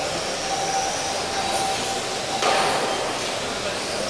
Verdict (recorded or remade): recorded